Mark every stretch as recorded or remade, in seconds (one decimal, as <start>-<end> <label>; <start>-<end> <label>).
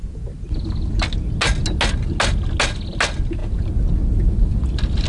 0.0-5.1 recorded